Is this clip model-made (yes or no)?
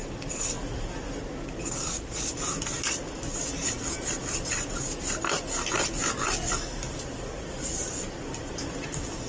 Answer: no